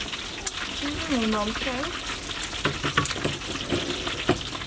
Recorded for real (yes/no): yes